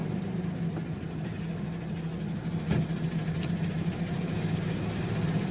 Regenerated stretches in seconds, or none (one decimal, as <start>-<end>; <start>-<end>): 0.0-0.5; 3.2-3.9